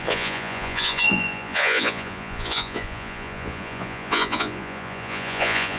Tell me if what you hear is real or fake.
fake